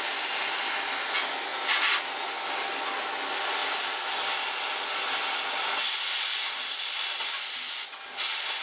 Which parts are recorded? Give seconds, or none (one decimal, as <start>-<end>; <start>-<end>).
0.0-8.6